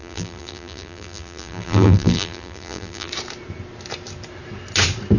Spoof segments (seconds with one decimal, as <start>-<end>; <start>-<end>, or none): 0.0-3.1